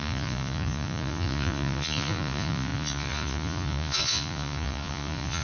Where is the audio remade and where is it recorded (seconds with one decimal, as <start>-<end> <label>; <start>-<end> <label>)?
0.0-5.4 remade